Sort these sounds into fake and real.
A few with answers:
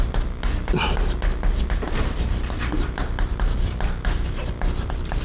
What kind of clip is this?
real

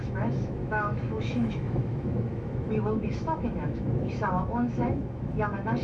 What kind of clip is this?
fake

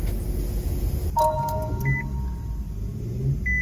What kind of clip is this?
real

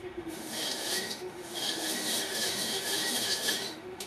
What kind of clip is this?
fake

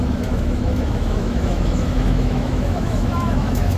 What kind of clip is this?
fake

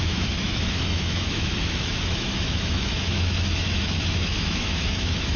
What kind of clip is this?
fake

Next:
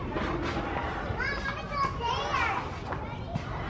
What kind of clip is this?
real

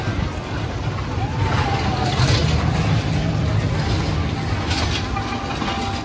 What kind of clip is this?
real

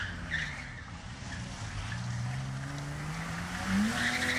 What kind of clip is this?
real